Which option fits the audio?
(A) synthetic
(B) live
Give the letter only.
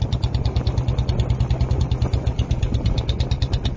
B